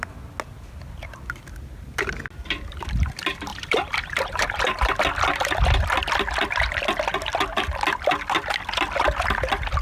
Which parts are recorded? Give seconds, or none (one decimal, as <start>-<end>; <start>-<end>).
0.0-3.5; 5.0-9.8